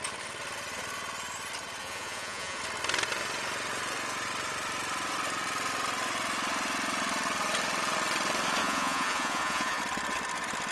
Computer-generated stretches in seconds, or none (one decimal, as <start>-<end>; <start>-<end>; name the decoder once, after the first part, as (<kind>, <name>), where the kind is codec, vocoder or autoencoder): 1.8-2.6 (vocoder, Vocos); 8.6-9.8